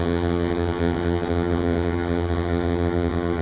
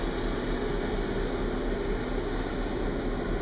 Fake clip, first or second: first